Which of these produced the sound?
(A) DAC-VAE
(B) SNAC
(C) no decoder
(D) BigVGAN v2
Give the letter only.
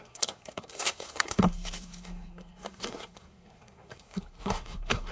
B